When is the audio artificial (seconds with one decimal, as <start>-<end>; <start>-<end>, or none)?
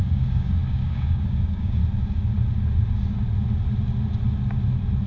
0.0-1.8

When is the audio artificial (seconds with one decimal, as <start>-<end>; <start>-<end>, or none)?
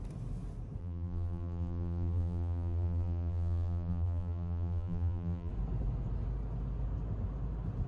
0.8-5.5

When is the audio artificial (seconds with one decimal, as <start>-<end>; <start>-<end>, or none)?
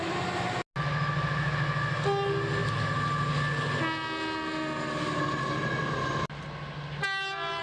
none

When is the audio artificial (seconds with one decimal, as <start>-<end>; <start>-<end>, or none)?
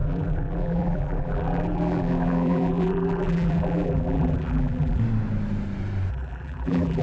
0.0-5.0; 6.1-7.0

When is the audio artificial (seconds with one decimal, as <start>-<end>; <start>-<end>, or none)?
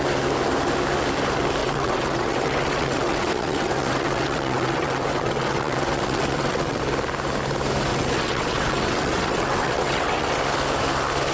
1.6-6.8; 7.9-10.4